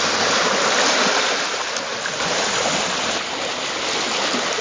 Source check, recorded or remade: recorded